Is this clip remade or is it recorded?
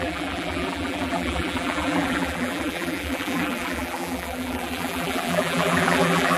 remade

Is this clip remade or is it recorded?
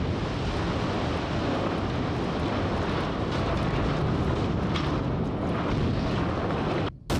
recorded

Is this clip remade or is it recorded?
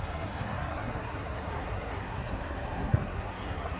remade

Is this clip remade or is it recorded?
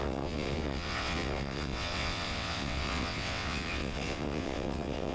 remade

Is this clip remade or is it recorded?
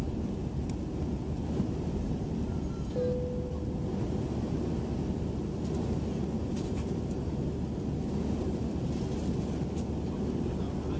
recorded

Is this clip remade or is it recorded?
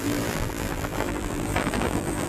remade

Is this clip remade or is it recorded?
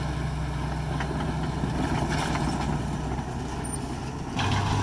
recorded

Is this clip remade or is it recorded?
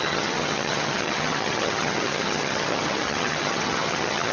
remade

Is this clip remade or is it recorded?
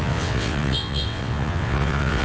remade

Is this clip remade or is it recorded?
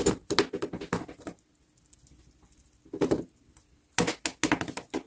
recorded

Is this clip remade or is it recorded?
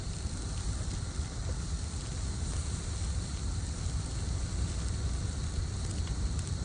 recorded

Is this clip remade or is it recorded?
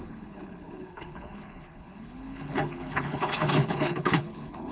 remade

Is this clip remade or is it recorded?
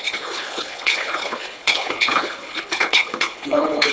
remade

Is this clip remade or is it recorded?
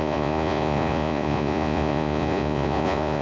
remade